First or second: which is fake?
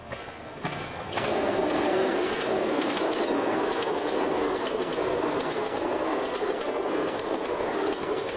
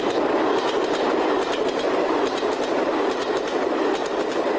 first